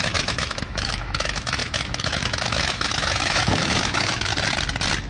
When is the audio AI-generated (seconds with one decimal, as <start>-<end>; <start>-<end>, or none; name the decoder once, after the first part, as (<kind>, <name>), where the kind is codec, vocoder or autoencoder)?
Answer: 0.0-4.3 (autoencoder, DAC-VAE)